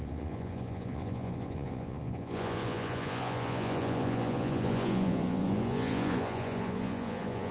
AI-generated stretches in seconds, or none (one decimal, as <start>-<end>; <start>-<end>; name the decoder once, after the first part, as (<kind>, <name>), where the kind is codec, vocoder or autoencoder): 0.0-7.5 (vocoder, Vocos)